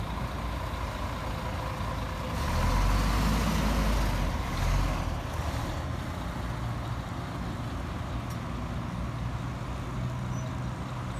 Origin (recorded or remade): recorded